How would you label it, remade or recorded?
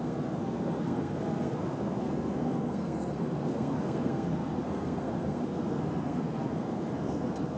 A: remade